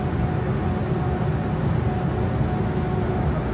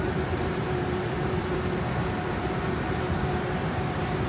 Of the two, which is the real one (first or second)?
first